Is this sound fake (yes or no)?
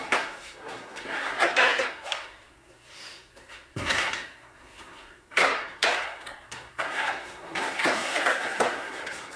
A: yes